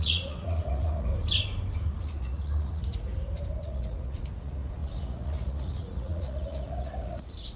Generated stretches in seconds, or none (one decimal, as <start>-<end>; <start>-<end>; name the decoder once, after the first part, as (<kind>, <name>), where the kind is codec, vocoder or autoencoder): 0.0-1.1 (vocoder, Vocos); 2.0-2.8; 3.6-7.6